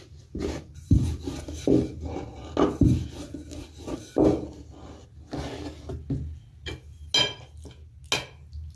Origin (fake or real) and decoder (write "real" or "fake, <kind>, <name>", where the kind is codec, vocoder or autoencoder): real